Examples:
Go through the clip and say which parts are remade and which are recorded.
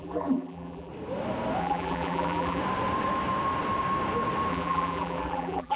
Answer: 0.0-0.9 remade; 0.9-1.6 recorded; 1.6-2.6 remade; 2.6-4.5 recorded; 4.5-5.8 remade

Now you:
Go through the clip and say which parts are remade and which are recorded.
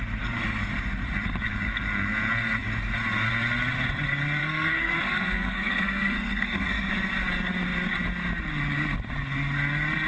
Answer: 0.0-4.4 recorded; 4.4-6.9 remade; 6.9-10.1 recorded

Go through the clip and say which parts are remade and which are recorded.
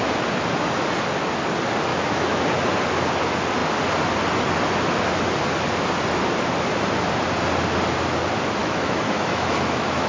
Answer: 0.0-1.9 recorded; 1.9-2.4 remade; 2.4-8.6 recorded; 8.6-10.1 remade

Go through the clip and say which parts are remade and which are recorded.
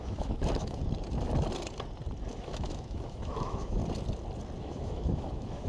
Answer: 0.0-0.8 remade; 0.8-2.3 recorded; 2.3-3.8 remade; 3.8-4.6 recorded; 4.6-5.7 remade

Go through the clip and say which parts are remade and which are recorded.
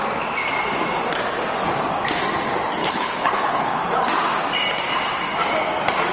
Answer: 0.0-2.8 recorded; 2.8-3.8 remade; 3.8-6.1 recorded